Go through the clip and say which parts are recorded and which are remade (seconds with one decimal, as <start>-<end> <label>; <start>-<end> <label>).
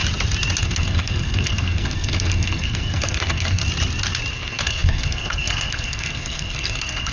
0.0-0.6 recorded; 0.6-3.6 remade; 3.6-4.3 recorded; 4.3-7.1 remade